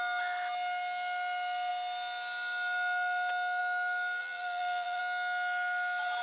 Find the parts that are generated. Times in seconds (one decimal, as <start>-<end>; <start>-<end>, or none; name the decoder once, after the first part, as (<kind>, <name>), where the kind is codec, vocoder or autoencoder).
4.2-5.0 (vocoder, BigVGAN v2)